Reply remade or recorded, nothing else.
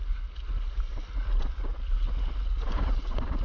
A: recorded